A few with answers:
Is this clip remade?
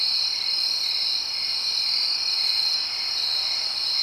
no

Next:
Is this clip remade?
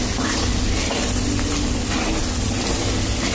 no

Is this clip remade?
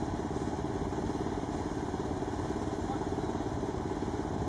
no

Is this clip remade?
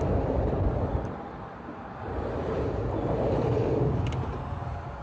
yes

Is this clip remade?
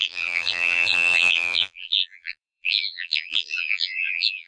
yes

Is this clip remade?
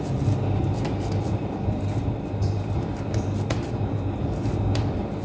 yes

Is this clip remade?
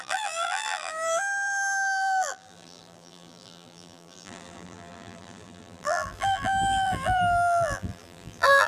yes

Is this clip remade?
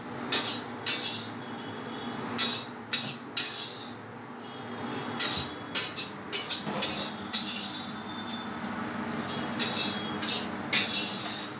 no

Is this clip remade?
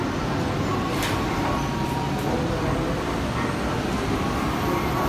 no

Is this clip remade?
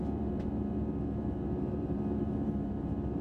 yes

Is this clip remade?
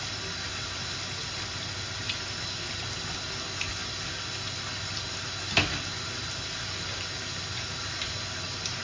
no